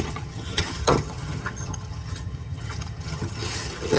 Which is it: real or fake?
fake